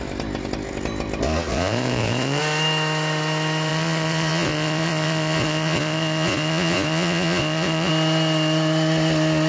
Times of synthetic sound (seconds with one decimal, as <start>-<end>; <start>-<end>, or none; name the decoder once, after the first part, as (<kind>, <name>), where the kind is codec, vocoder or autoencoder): 1.5-2.4 (vocoder, Vocos); 3.7-7.9